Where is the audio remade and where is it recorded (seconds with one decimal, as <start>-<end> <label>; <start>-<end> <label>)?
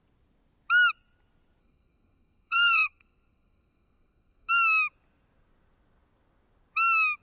0.0-1.6 recorded; 1.6-4.5 remade; 4.5-7.2 recorded